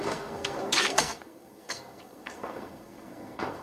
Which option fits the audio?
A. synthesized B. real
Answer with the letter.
A